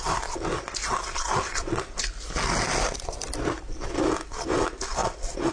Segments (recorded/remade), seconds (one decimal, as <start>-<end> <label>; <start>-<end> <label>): 0.0-5.5 recorded